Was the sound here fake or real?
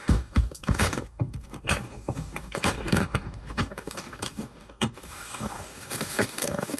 fake